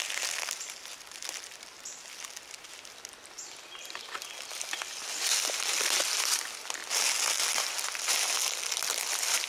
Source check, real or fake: real